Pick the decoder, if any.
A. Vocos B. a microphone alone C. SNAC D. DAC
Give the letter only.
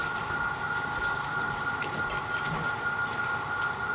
B